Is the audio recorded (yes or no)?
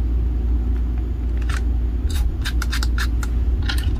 yes